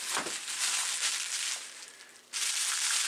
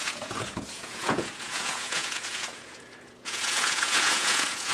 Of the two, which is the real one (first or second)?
first